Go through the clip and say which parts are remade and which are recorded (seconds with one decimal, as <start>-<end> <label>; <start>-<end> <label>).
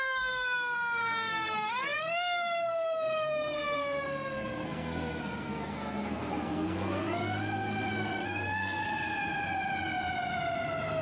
0.0-8.8 remade; 8.8-11.0 recorded